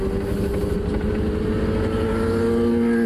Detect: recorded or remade recorded